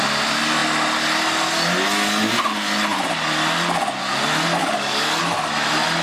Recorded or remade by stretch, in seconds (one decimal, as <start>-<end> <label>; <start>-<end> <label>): 0.0-4.6 recorded; 4.6-5.2 remade; 5.2-6.0 recorded